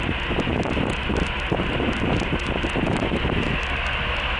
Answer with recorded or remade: recorded